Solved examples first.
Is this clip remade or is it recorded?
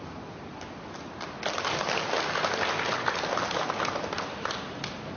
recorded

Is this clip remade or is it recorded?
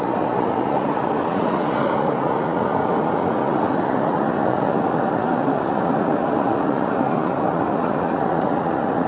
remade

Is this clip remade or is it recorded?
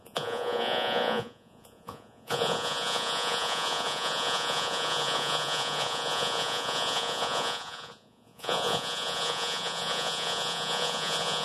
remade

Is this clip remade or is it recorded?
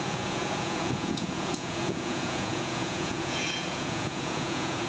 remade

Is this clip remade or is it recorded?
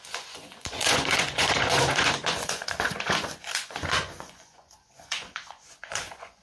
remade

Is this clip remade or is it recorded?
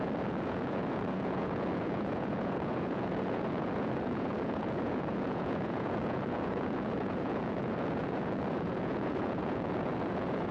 remade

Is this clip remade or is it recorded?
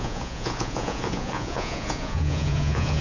remade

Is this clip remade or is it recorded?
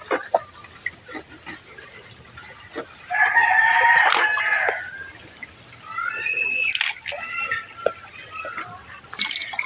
recorded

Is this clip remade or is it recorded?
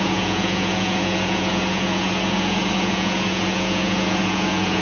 remade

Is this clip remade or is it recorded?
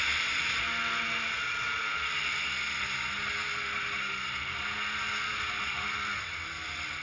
recorded